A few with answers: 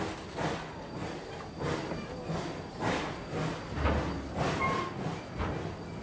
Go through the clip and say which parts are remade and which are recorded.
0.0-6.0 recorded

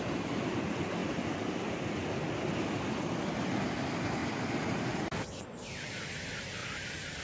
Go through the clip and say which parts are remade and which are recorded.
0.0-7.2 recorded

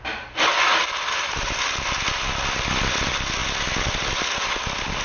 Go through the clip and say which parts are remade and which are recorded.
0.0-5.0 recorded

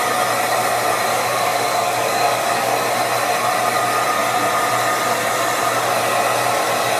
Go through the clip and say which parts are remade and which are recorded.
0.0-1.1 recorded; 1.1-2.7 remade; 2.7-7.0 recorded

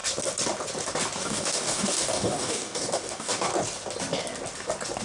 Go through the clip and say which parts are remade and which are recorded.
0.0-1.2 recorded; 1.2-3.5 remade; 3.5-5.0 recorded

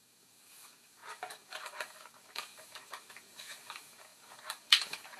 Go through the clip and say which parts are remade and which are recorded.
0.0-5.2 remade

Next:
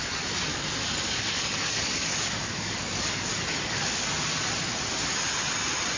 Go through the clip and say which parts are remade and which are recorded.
0.0-0.5 recorded; 0.5-4.1 remade; 4.1-6.0 recorded